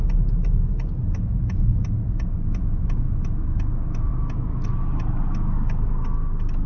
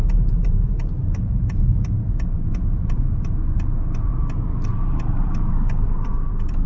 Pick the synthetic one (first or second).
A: second